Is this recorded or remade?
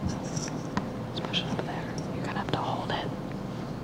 recorded